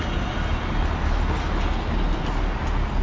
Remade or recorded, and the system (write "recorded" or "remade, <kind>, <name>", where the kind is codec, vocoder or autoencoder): recorded